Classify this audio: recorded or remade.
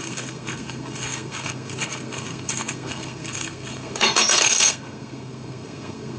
remade